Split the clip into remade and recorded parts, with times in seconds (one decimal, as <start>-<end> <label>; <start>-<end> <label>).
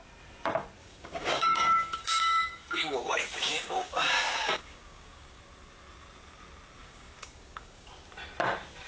0.0-0.8 recorded; 0.8-5.4 remade; 5.4-6.8 recorded; 6.8-7.9 remade; 7.9-8.9 recorded